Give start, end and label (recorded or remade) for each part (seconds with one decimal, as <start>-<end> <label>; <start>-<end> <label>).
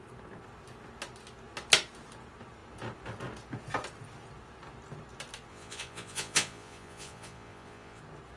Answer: 0.0-5.5 recorded; 5.5-8.0 remade; 8.0-8.4 recorded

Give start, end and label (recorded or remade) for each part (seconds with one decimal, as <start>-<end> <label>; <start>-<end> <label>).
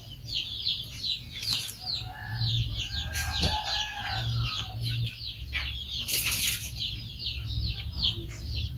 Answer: 0.0-0.4 recorded; 0.4-1.0 remade; 1.0-8.8 recorded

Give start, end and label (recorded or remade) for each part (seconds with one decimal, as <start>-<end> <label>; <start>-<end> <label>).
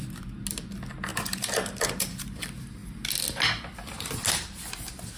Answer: 0.0-1.1 recorded; 1.1-2.2 remade; 2.2-5.2 recorded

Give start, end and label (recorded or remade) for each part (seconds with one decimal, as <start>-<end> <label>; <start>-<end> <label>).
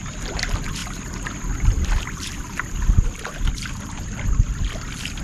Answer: 0.0-5.2 recorded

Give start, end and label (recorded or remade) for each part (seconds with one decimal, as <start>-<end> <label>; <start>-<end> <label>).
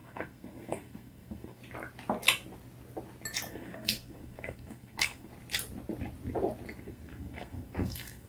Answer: 0.0-1.6 remade; 1.6-3.5 recorded; 3.5-5.3 remade; 5.3-6.8 recorded; 6.8-8.3 remade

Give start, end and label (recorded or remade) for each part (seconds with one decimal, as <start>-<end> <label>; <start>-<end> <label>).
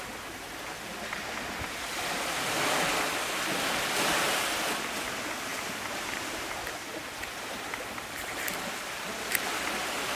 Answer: 0.0-5.5 recorded; 5.5-6.1 remade; 6.1-10.2 recorded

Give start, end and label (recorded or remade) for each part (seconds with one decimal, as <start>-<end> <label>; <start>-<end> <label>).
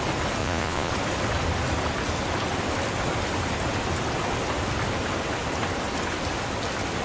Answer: 0.0-0.4 recorded; 0.4-0.9 remade; 0.9-7.0 recorded